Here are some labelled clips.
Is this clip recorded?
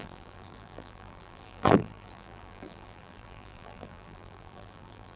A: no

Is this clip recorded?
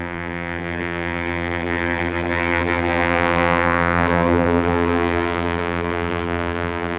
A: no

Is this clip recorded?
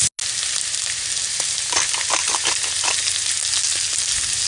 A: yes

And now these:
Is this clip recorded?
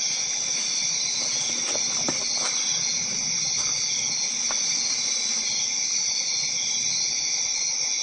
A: yes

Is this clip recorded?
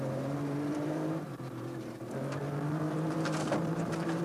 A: no